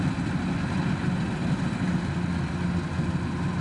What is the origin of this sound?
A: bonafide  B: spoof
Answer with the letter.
A